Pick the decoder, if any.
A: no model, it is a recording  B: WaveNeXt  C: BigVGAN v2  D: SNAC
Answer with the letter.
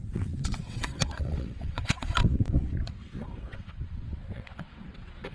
B